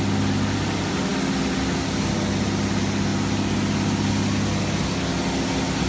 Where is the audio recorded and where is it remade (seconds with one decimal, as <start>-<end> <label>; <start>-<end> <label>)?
0.0-5.9 recorded